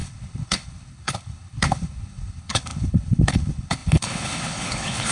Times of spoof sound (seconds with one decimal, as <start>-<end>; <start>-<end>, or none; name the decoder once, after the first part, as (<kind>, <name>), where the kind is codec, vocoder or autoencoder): 0.0-5.1 (codec, HILCodec)